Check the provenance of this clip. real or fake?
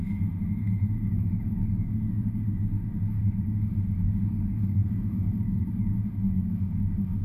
fake